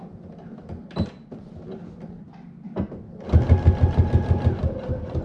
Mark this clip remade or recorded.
recorded